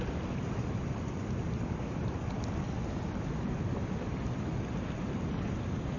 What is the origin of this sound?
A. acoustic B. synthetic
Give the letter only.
A